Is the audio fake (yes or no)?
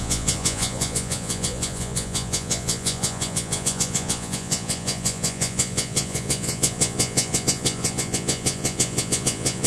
yes